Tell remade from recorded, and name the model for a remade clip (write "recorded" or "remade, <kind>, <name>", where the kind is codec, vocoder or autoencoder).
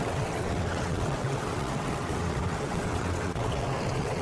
remade, vocoder, WaveNeXt